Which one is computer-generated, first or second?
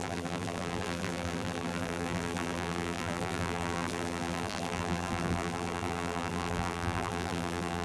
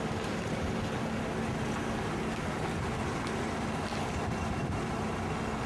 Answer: first